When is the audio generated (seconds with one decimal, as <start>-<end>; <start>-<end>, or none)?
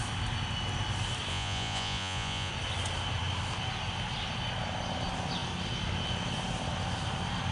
1.3-2.5